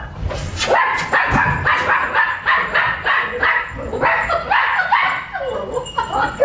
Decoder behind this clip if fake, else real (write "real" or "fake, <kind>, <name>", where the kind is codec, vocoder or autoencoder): real